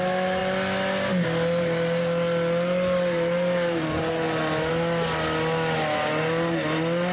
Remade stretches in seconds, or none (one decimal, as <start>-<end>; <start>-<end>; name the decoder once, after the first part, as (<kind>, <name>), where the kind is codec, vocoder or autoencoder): none